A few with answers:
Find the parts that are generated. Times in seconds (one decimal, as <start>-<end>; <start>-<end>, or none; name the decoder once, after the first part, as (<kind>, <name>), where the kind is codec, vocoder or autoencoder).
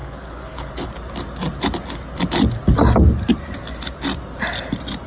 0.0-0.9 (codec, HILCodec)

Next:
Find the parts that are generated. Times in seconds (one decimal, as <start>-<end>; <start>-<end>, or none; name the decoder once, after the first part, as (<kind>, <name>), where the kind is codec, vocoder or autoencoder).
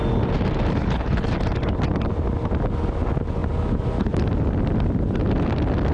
0.8-1.3 (codec, HILCodec)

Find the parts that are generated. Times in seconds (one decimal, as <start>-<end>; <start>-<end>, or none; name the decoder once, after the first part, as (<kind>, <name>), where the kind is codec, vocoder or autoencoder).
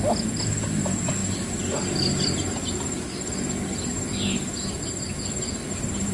none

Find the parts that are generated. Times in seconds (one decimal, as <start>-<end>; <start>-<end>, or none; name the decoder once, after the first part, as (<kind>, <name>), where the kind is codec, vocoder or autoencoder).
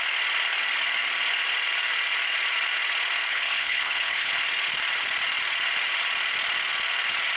3.3-4.3 (codec, HILCodec)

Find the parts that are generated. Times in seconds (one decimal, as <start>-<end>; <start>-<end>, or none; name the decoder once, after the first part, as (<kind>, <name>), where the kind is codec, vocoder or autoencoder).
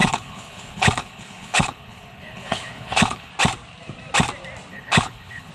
0.0-3.3 (codec, HILCodec); 4.7-5.5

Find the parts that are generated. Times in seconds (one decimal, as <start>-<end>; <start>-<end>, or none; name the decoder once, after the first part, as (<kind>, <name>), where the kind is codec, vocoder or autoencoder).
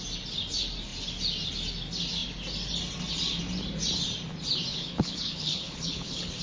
4.7-6.4 (codec, HILCodec)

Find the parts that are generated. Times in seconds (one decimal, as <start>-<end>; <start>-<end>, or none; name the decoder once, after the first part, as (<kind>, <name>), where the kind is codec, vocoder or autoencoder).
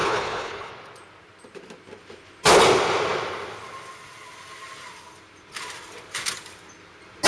0.0-0.7 (codec, HILCodec)